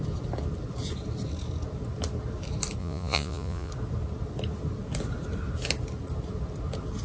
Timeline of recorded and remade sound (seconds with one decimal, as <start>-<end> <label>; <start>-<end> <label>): 0.0-2.8 recorded; 2.8-3.7 remade; 3.7-7.0 recorded